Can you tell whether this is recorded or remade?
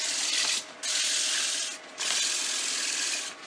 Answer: recorded